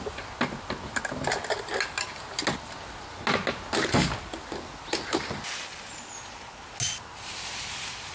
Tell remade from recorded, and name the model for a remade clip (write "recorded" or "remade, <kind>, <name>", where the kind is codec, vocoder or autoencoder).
recorded